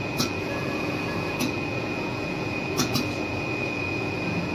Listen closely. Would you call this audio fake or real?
fake